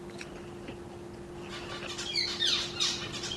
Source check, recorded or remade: recorded